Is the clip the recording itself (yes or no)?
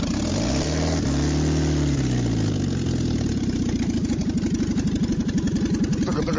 yes